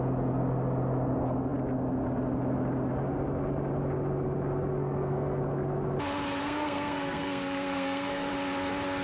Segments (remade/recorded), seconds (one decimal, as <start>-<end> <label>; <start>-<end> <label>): 0.0-4.8 recorded; 4.8-5.4 remade; 5.4-6.4 recorded; 6.4-8.3 remade; 8.3-9.0 recorded